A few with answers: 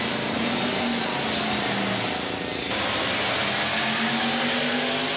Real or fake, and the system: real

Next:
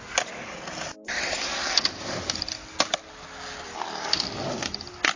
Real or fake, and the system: real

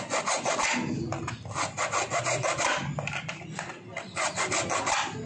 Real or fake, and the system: real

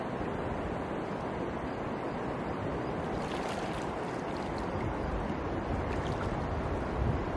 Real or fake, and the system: real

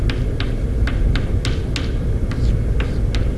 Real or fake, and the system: real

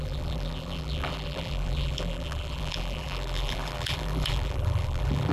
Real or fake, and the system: fake, vocoder, BigVGAN v2